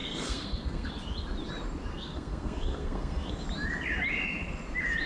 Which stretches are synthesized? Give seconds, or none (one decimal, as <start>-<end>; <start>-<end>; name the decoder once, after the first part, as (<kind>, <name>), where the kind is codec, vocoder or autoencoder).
0.0-0.9 (codec, SNAC); 1.9-3.3